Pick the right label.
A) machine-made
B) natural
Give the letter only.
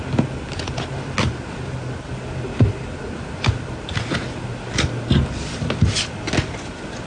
B